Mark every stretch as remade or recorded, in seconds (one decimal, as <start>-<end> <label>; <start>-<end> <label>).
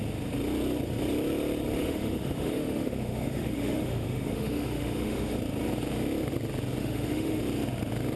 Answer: 0.0-1.8 recorded; 1.8-5.4 remade; 5.4-6.8 recorded; 6.8-7.4 remade; 7.4-8.2 recorded